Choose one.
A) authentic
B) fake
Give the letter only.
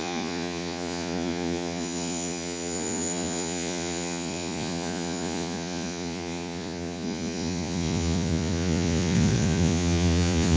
B